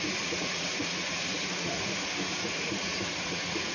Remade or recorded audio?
remade